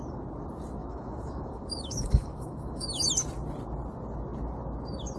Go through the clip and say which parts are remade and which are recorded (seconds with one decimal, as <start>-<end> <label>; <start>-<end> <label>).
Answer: 0.0-0.8 recorded; 0.8-3.1 remade; 3.1-5.2 recorded

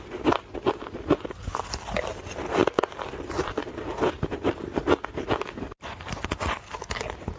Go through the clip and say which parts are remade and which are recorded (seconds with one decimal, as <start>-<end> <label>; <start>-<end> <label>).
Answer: 0.0-7.4 recorded

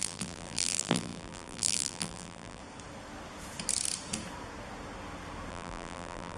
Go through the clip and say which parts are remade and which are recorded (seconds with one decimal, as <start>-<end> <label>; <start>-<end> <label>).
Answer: 0.0-2.6 remade; 2.6-5.5 recorded; 5.5-6.4 remade

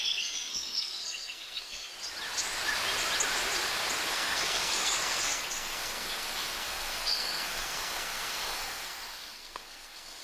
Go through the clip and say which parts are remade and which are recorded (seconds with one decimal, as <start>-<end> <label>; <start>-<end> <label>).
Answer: 0.0-1.9 remade; 1.9-4.1 recorded; 4.1-10.2 remade

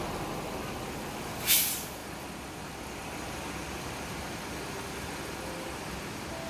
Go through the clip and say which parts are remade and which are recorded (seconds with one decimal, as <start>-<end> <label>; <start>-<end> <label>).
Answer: 0.0-6.5 recorded

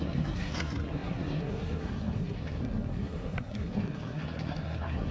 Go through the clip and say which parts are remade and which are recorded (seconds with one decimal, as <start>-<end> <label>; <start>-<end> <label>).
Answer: 0.0-5.1 remade

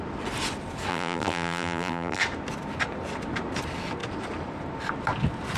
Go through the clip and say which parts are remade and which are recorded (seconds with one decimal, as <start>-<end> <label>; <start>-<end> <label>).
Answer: 0.0-0.9 recorded; 0.9-2.2 remade; 2.2-5.6 recorded

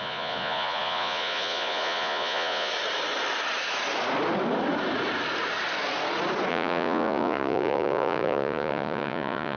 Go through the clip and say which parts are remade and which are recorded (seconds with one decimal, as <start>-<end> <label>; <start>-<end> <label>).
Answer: 0.0-2.7 remade; 2.7-6.5 recorded; 6.5-9.6 remade